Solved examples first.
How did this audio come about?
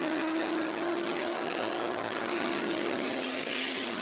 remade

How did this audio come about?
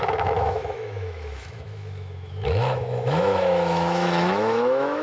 remade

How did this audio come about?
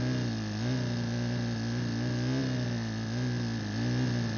recorded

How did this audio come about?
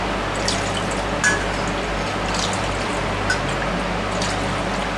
recorded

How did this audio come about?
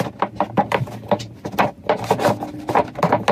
recorded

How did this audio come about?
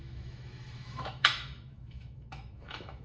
remade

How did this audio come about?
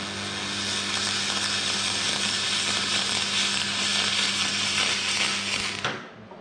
recorded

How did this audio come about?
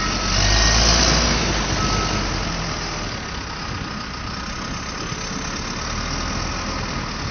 recorded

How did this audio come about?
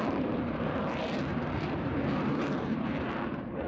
remade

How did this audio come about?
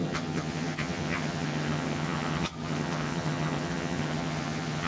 remade